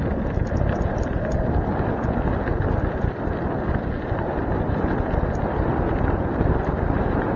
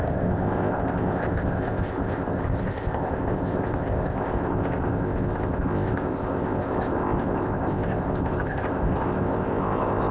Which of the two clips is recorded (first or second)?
first